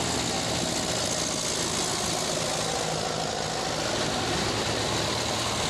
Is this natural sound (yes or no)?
yes